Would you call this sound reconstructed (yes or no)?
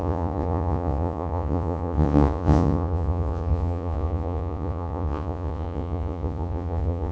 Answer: yes